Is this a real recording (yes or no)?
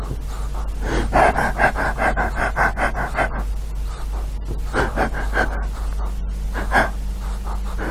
yes